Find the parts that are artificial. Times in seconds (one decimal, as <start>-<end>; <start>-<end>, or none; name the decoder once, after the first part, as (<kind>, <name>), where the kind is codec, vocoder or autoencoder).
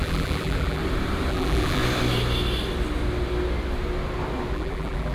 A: 0.0-0.8 (vocoder, BigVGAN v2); 1.3-1.8; 4.5-5.1